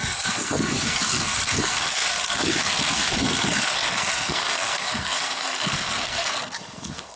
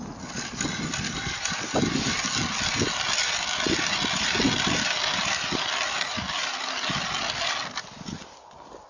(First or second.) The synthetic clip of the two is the first